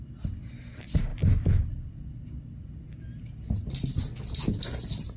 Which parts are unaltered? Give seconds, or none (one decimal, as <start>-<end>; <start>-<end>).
0.0-5.2

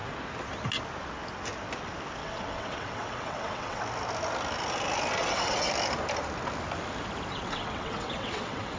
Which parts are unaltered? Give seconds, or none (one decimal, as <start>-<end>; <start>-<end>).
0.0-2.2; 3.8-5.2; 5.7-7.3